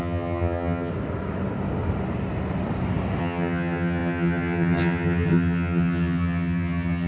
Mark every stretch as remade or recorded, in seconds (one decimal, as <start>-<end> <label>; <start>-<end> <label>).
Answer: 0.0-0.9 remade; 0.9-3.2 recorded; 3.2-7.1 remade